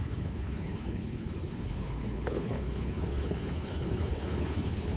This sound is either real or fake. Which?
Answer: fake